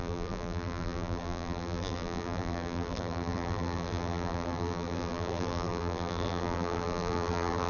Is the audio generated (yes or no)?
yes